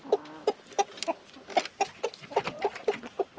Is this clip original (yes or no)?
yes